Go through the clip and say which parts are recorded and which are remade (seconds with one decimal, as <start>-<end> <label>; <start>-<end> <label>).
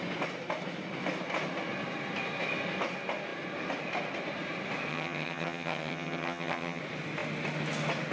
0.0-4.9 recorded; 4.9-6.8 remade; 6.8-8.1 recorded